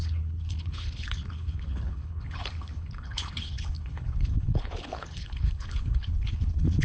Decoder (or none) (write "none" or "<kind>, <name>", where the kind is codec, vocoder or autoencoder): codec, HILCodec